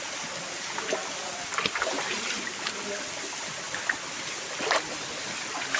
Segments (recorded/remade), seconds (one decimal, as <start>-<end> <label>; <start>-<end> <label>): 0.0-5.8 recorded